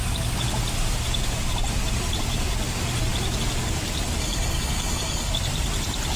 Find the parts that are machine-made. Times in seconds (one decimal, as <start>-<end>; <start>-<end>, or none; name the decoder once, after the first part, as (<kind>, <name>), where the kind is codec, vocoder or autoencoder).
4.2-5.3 (codec, DAC)